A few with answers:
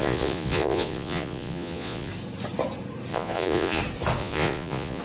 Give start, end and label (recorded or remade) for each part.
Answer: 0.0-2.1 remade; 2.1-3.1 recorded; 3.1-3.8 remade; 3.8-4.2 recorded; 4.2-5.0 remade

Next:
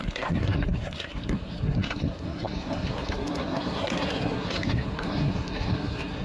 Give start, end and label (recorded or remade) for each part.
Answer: 0.0-6.2 remade

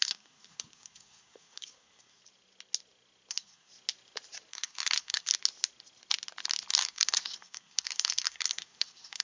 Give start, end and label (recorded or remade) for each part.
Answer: 0.0-2.2 remade; 2.2-3.3 recorded; 3.3-3.7 remade; 3.7-4.5 recorded; 4.5-5.3 remade; 5.3-6.7 recorded; 6.7-9.2 remade